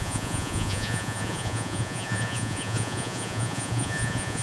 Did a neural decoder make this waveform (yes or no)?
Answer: yes